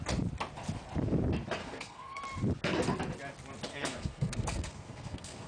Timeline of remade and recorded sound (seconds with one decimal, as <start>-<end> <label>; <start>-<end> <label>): 0.0-1.6 recorded; 1.6-2.2 remade; 2.2-3.7 recorded; 3.7-5.5 remade